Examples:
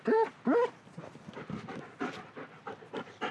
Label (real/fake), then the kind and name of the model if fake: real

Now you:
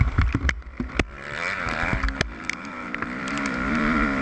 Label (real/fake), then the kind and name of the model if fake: fake, vocoder, BigVGAN v2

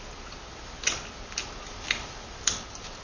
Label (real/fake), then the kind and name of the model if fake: real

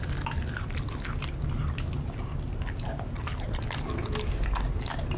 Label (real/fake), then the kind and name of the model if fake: real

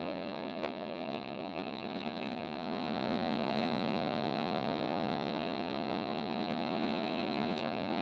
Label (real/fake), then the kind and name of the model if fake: fake, vocoder, Vocos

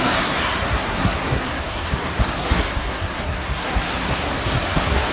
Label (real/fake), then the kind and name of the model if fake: fake, codec, SNAC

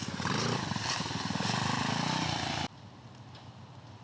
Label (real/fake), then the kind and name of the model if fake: real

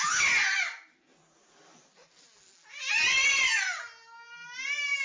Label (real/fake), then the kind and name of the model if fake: real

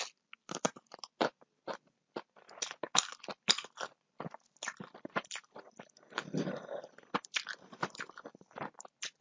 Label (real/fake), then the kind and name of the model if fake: real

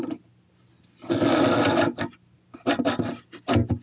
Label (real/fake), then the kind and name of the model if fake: real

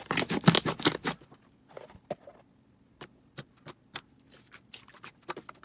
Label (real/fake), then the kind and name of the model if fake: real